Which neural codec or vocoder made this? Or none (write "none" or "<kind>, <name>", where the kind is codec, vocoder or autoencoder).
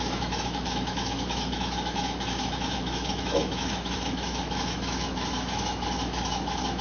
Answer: autoencoder, DAC-VAE